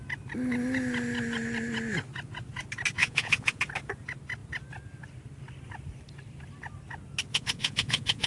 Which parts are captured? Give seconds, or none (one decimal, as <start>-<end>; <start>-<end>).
0.0-3.0; 3.6-7.3